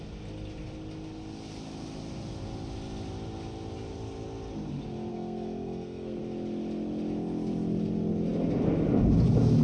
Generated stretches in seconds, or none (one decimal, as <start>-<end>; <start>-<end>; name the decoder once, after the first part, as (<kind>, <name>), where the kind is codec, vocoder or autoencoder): 5.1-6.2 (codec, SNAC)